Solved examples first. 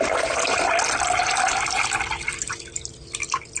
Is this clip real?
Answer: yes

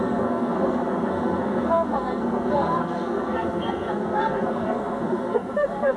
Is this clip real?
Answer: no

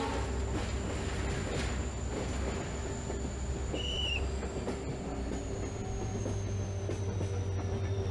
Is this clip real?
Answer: yes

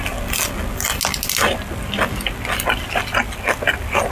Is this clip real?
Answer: yes